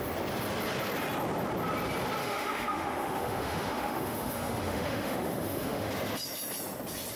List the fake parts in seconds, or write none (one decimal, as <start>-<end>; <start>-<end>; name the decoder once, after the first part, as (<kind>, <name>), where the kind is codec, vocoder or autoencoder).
2.2-5.9 (autoencoder, DAC-VAE)